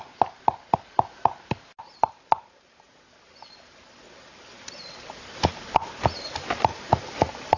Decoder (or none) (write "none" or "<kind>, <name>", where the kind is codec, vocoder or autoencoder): none